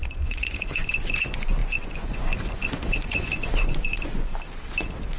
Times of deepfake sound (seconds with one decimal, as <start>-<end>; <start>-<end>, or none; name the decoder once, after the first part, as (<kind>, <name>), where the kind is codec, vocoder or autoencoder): 0.0-4.3 (vocoder, Vocos)